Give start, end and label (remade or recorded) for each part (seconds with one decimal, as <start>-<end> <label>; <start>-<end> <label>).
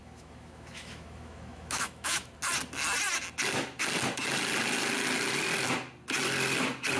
0.0-2.3 remade; 2.3-7.0 recorded